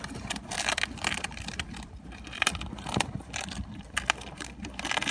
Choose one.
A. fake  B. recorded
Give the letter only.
A